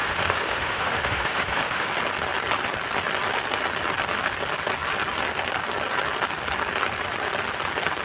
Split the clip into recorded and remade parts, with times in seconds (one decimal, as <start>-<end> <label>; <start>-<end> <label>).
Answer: 0.0-1.9 remade; 1.9-8.0 recorded